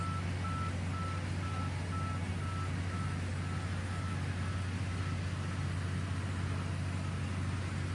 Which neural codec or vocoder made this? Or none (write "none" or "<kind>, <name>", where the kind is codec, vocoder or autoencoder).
none